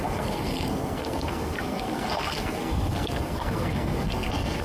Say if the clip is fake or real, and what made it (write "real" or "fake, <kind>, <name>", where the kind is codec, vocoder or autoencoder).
fake, codec, SNAC